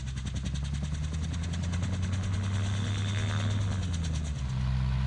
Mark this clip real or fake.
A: real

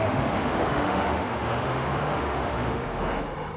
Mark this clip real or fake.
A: fake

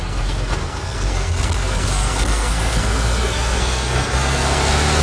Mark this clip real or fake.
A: fake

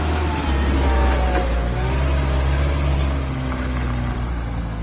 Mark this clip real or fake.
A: real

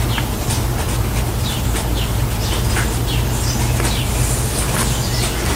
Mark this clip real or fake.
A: real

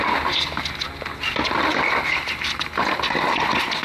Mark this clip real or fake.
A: real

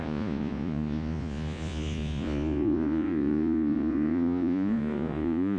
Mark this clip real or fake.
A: fake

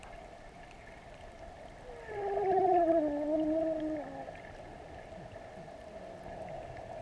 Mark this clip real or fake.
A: real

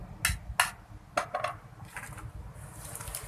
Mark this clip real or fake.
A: real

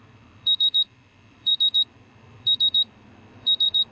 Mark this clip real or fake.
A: fake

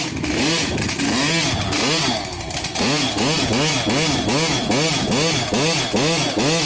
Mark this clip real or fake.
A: real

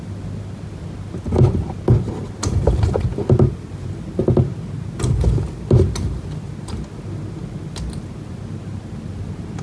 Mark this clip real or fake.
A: real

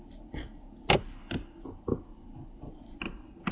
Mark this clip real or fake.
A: real